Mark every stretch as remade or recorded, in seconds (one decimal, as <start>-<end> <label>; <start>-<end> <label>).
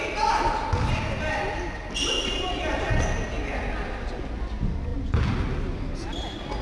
0.0-6.6 recorded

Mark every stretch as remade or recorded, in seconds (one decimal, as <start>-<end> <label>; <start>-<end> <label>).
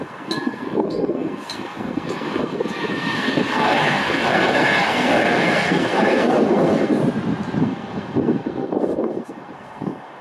0.0-7.0 remade; 7.0-7.6 recorded; 7.6-10.2 remade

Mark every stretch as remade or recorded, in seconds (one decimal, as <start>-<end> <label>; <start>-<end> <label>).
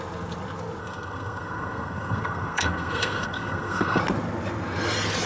0.0-0.8 recorded; 0.8-4.0 remade; 4.0-5.3 recorded